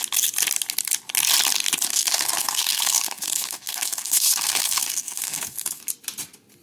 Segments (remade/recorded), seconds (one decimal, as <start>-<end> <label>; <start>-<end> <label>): 0.0-1.9 recorded; 1.9-5.9 remade; 5.9-6.6 recorded